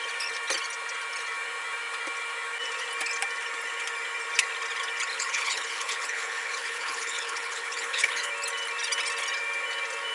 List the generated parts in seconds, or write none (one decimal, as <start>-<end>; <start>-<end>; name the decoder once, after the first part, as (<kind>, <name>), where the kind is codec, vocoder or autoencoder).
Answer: 5.1-8.3 (codec, HILCodec)